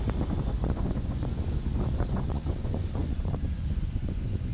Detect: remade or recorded remade